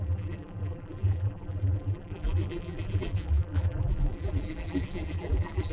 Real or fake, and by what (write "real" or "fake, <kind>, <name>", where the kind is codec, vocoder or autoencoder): fake, vocoder, BigVGAN v2